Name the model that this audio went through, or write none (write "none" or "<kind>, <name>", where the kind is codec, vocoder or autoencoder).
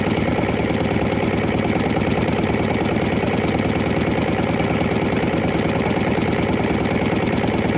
none